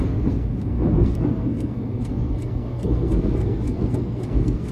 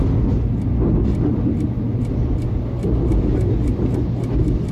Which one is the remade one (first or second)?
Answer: first